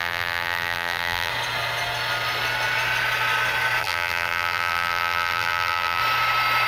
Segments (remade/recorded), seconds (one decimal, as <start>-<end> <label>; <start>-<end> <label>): 0.0-1.3 remade; 1.3-3.8 recorded; 3.8-6.0 remade; 6.0-6.7 recorded